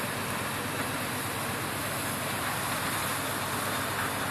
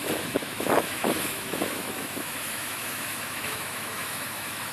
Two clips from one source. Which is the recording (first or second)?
first